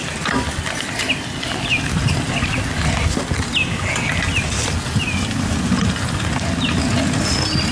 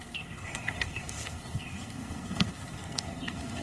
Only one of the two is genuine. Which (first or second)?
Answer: first